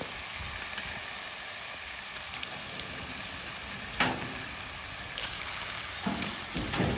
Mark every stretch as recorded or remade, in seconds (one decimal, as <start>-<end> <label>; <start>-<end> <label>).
0.0-5.2 recorded; 5.2-5.9 remade; 5.9-7.0 recorded

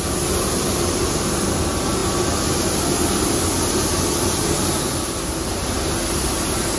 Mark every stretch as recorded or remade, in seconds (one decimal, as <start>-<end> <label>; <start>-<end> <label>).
0.0-6.8 recorded

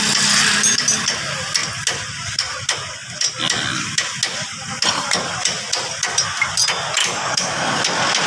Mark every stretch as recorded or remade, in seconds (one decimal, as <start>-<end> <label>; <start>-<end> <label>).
0.0-7.0 recorded; 7.0-7.8 remade; 7.8-8.3 recorded